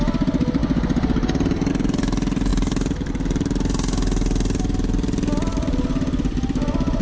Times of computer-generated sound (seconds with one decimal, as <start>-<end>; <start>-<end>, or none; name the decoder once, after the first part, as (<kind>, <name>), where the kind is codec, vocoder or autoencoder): none